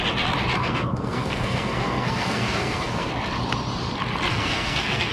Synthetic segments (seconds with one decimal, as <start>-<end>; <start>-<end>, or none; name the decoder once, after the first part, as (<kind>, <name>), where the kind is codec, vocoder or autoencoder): 0.6-3.1 (codec, SNAC); 4.3-5.1